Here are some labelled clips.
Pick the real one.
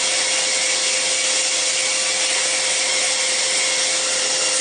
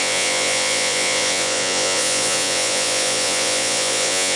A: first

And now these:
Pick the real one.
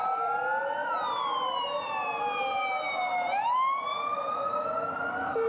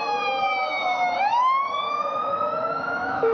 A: first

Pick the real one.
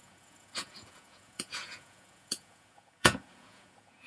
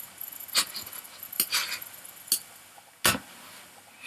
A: second